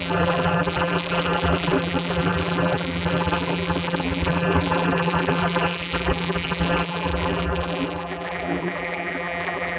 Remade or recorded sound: remade